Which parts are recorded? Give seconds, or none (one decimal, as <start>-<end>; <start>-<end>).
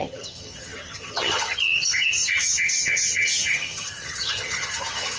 none